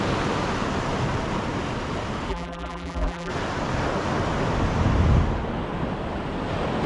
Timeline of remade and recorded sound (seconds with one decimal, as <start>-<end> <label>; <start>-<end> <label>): 0.0-2.3 recorded; 2.3-3.3 remade; 3.3-6.9 recorded